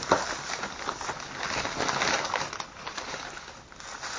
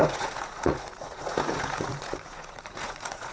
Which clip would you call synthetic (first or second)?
second